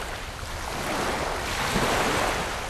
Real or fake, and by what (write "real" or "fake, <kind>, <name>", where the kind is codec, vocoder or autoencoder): real